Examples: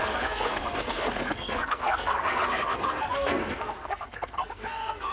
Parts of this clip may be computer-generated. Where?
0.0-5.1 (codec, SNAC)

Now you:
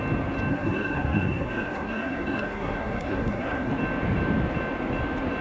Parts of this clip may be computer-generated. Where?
0.5-3.7 (codec, SNAC)

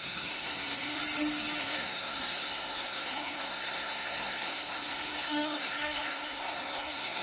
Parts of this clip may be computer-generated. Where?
0.0-1.0 (codec, SNAC); 1.6-7.2

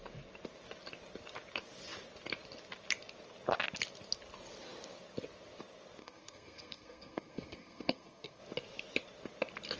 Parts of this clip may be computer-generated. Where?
6.0-8.4 (codec, SNAC)

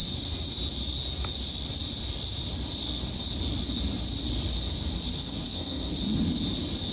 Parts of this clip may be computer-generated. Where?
5.1-6.0 (codec, SNAC)

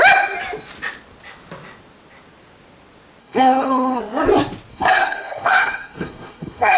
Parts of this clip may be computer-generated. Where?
3.2-4.0 (codec, SNAC); 4.7-6.8